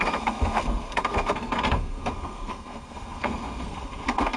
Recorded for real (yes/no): no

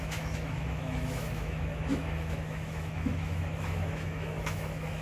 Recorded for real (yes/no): no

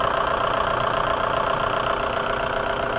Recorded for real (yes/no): yes